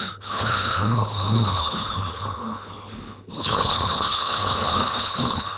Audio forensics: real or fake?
fake